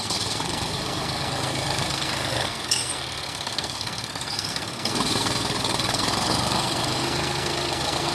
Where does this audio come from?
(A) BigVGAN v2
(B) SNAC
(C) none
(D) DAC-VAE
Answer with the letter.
B